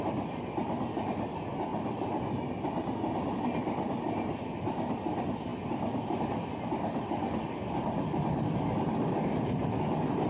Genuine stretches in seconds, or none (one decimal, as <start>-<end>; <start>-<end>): 0.0-10.3